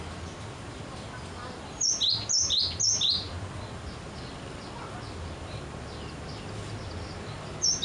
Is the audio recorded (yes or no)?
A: yes